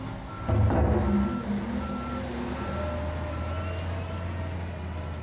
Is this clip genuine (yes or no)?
yes